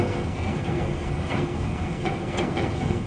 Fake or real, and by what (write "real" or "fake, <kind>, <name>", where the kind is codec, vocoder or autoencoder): fake, codec, SNAC